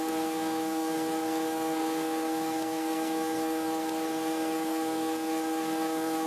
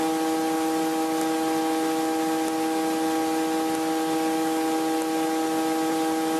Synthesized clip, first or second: first